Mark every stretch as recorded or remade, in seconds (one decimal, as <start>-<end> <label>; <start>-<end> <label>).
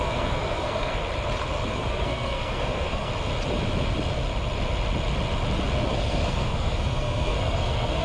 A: 0.0-1.0 remade; 1.0-1.7 recorded; 1.7-3.1 remade; 3.1-5.9 recorded; 5.9-8.0 remade